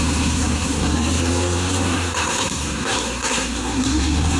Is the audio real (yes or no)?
no